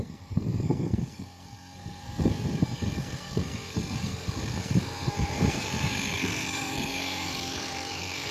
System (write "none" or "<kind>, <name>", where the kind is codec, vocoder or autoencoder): codec, SNAC